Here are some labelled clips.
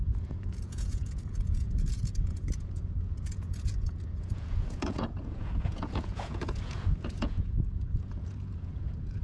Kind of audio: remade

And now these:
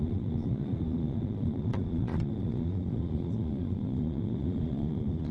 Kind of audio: remade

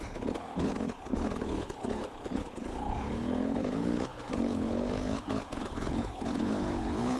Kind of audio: remade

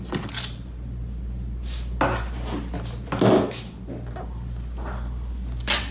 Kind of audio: recorded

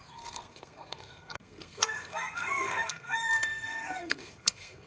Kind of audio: remade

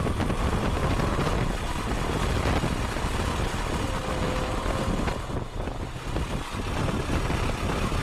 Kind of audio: recorded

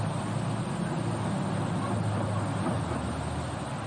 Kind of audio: recorded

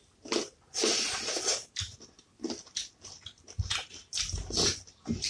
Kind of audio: recorded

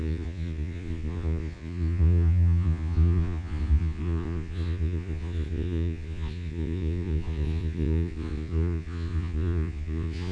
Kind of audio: remade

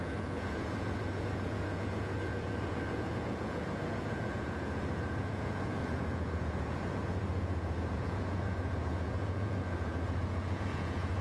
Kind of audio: remade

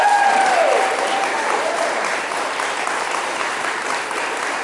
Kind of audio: remade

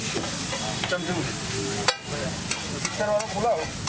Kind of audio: recorded